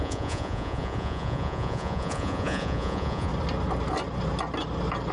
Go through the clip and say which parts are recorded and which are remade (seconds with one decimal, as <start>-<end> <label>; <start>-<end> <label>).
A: 0.0-3.3 remade; 3.3-5.1 recorded